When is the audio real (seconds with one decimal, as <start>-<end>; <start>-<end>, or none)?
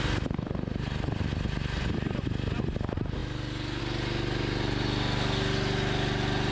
0.0-6.5